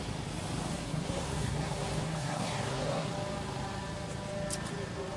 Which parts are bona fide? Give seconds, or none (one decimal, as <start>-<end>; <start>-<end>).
0.0-0.7; 3.1-5.2